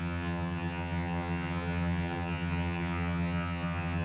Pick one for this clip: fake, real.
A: fake